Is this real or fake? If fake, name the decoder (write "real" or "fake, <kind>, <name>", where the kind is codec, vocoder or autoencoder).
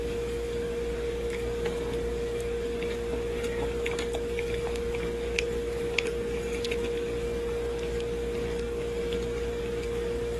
fake, codec, DAC